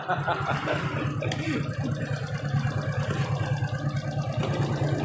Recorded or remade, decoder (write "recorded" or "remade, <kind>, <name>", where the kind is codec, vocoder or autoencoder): recorded